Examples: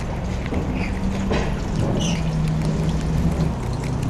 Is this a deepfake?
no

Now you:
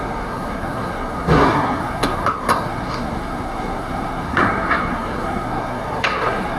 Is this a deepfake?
yes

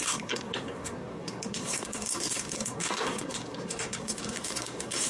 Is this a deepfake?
yes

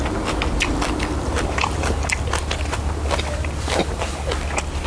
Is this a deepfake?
no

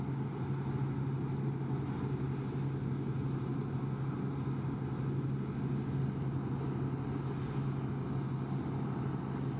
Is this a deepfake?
no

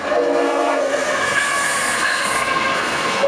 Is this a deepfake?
yes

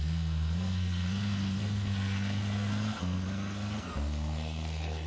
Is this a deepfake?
yes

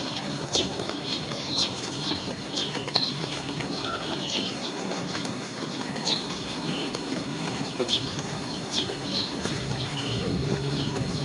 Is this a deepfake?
yes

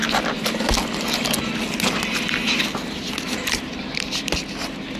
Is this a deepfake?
no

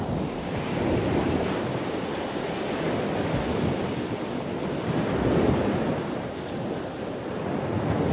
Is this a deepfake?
no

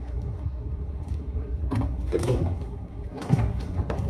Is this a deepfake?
yes